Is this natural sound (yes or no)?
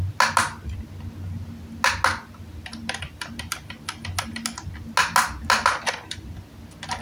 yes